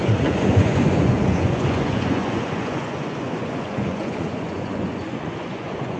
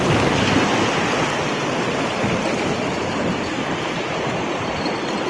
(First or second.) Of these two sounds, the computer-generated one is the first